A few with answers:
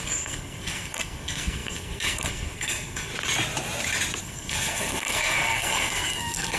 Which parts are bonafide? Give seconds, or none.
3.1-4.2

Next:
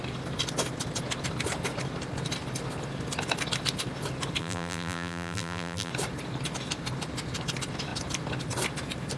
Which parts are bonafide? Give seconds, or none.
0.0-4.4; 5.9-9.2

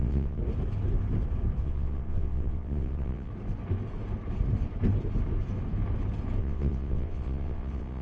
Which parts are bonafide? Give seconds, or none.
0.4-1.6; 3.3-6.4

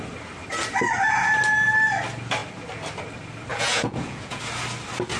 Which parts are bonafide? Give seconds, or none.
0.0-3.5; 4.4-5.2

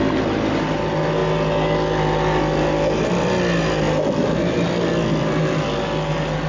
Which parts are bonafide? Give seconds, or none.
0.0-6.5